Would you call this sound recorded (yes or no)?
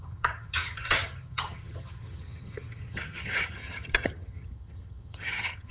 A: no